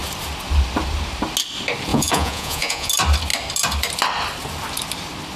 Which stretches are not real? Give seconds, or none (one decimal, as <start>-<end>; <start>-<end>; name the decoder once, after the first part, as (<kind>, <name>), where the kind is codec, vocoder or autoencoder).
1.9-2.9 (vocoder, Vocos)